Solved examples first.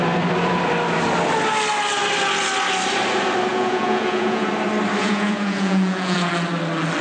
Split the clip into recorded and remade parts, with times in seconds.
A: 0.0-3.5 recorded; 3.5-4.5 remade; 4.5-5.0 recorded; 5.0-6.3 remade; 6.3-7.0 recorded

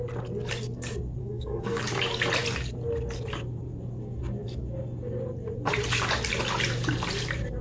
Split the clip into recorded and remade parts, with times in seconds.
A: 0.0-1.2 recorded; 1.2-1.8 remade; 1.8-7.6 recorded